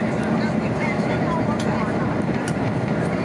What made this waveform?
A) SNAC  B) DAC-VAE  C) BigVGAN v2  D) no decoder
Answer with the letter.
C